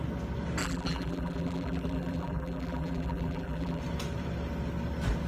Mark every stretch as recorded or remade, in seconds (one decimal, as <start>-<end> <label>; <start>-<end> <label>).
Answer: 0.0-0.6 recorded; 0.6-3.8 remade; 3.8-5.3 recorded

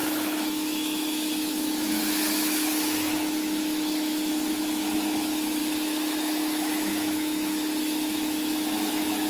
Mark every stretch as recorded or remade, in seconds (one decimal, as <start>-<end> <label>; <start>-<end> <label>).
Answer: 0.0-9.3 remade

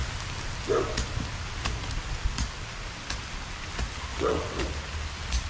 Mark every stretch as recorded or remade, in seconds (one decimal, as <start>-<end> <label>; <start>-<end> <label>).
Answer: 0.0-4.1 recorded; 4.1-4.6 remade; 4.6-5.5 recorded

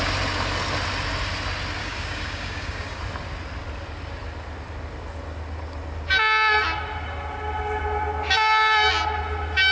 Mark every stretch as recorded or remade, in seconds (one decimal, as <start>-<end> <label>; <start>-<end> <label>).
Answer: 0.0-1.8 recorded; 1.8-3.0 remade; 3.0-9.7 recorded

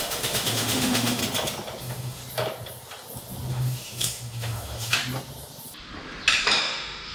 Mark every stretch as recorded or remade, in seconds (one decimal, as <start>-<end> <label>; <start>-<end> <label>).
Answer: 0.0-1.2 remade; 1.2-1.8 recorded; 1.8-2.2 remade; 2.2-3.5 recorded; 3.5-5.0 remade; 5.0-6.6 recorded; 6.6-7.1 remade

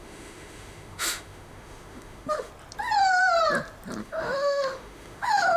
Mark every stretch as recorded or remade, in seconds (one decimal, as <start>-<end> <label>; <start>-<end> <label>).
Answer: 0.0-2.5 remade; 2.5-4.0 recorded; 4.0-5.6 remade

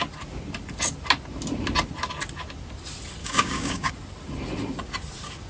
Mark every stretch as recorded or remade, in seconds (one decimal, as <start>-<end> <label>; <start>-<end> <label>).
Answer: 0.0-3.2 recorded; 3.2-3.9 remade; 3.9-5.5 recorded